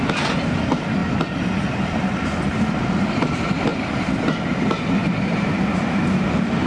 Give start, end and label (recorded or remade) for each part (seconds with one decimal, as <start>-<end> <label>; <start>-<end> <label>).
0.0-5.0 recorded; 5.0-6.2 remade; 6.2-6.7 recorded